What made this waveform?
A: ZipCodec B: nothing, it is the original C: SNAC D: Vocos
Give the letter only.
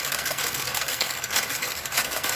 C